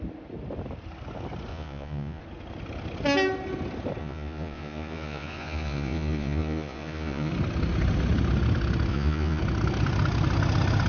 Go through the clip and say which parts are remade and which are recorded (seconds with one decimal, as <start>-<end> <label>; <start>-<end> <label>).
0.0-1.5 recorded; 1.5-2.2 remade; 2.2-4.0 recorded; 4.0-7.3 remade; 7.3-8.9 recorded; 8.9-9.4 remade; 9.4-10.9 recorded